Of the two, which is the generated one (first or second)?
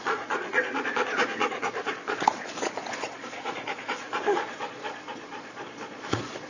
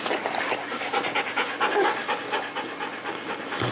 first